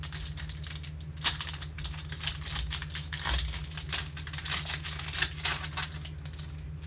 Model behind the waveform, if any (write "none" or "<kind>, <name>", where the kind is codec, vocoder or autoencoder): none